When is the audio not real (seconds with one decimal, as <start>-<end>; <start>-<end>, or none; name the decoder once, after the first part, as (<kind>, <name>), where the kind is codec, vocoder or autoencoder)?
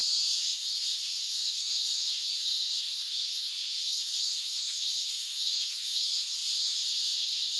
0.0-7.6 (codec, SNAC)